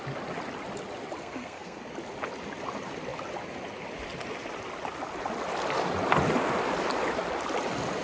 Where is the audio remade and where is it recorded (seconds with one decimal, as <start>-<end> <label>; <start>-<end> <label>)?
0.0-1.2 recorded; 1.2-1.8 remade; 1.8-8.0 recorded